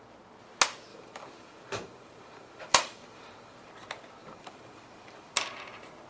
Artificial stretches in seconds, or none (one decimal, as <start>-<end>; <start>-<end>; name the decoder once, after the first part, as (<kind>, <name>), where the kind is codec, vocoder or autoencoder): 0.9-3.7 (vocoder, BigVGAN v2); 4.2-5.3